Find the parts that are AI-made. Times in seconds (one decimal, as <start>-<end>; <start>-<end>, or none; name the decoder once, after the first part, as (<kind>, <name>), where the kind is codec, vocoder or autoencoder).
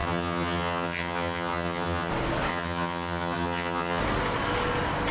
0.0-2.1 (vocoder, HiFi-GAN); 2.5-4.0